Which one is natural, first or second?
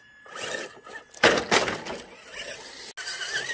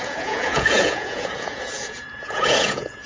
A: first